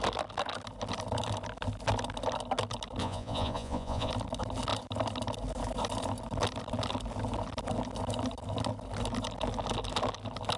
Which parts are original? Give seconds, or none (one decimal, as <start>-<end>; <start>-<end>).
0.0-3.0; 4.1-10.6